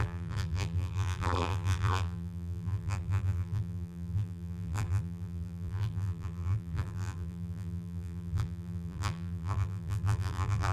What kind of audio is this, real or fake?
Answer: fake